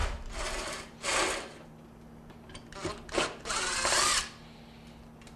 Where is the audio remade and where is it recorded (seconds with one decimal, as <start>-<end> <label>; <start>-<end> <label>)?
0.0-5.4 recorded